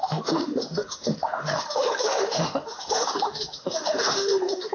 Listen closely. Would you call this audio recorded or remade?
remade